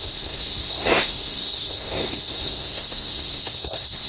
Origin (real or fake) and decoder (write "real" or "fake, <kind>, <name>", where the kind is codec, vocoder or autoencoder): fake, codec, SNAC